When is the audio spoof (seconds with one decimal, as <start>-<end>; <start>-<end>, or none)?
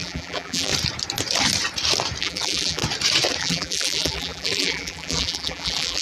0.0-0.7; 2.2-2.8; 3.4-6.0